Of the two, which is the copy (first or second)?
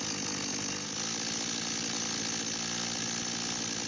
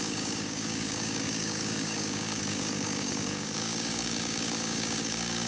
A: second